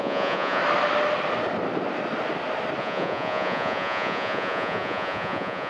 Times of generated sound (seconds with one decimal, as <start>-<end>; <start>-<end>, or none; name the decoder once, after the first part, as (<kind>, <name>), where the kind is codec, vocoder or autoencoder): 0.0-0.6 (vocoder, Vocos); 2.8-5.7